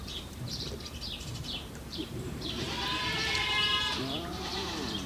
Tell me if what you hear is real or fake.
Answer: fake